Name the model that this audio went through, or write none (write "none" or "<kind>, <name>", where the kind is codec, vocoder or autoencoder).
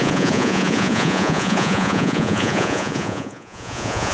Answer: vocoder, Vocos